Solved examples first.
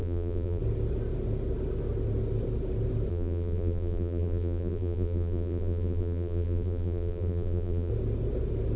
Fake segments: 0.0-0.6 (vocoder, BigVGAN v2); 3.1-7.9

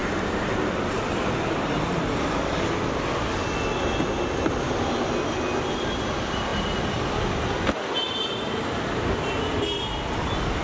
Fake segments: 0.0-0.9 (vocoder, BigVGAN v2)

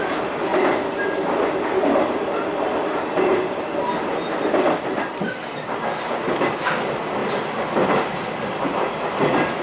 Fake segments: none

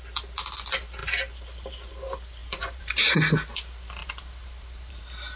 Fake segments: 2.4-3.1 (vocoder, BigVGAN v2); 4.0-5.0

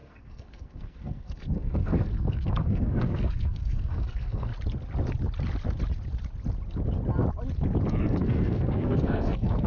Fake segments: 0.0-4.5 (codec, SNAC); 8.0-9.7

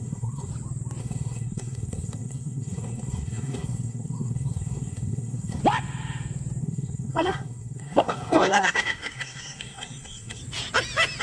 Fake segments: 0.0-0.5 (codec, SNAC); 1.0-5.6; 6.6-10.4